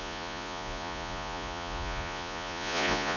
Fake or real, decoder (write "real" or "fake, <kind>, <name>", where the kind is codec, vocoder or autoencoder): fake, vocoder, Vocos